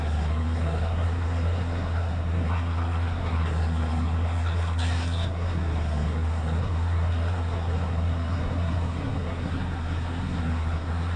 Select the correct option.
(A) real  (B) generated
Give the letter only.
B